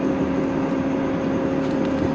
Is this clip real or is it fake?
real